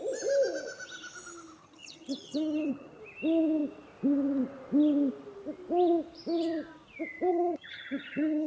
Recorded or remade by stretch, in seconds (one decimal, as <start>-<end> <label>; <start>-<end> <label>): 0.0-1.6 recorded; 1.6-3.0 remade; 3.0-7.3 recorded; 7.3-8.5 remade